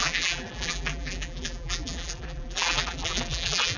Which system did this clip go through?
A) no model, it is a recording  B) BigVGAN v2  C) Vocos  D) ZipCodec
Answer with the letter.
B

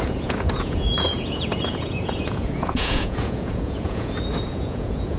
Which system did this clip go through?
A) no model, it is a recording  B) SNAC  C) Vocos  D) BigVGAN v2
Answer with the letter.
C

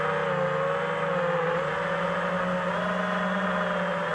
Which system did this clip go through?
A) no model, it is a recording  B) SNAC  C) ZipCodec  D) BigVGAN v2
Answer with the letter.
A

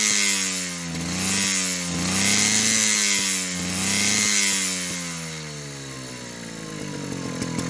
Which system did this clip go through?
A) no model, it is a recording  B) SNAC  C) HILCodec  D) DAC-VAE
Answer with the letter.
A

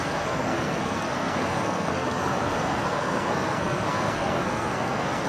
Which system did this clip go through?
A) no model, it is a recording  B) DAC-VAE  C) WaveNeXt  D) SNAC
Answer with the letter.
D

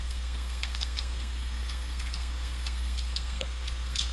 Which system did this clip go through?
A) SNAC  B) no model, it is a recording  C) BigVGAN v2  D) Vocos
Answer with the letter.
A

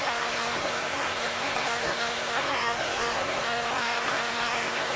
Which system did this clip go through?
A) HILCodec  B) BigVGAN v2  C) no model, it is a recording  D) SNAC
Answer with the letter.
D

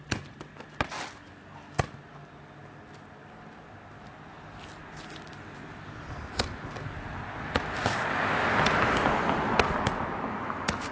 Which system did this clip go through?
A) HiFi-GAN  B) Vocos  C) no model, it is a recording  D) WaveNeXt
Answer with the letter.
C